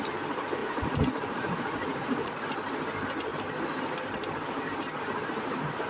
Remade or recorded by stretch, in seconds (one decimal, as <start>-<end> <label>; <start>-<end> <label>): 0.0-0.6 recorded; 0.6-2.3 remade; 2.3-5.9 recorded

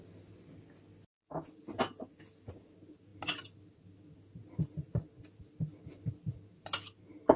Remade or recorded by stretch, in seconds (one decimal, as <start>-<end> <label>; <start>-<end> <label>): 0.0-7.4 recorded